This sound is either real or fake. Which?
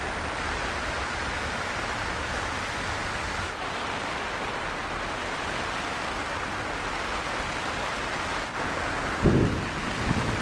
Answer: real